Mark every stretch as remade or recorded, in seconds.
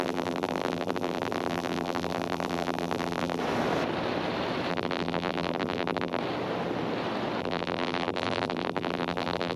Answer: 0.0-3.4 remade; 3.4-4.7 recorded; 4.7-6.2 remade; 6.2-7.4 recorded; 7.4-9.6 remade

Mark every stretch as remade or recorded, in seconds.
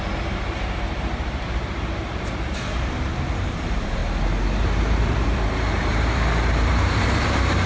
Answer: 0.0-4.0 remade; 4.0-4.6 recorded; 4.6-7.7 remade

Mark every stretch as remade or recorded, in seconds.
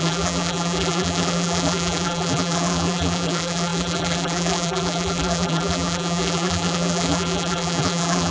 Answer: 0.0-8.3 remade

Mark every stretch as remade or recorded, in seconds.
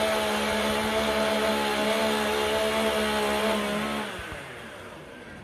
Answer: 0.0-5.4 recorded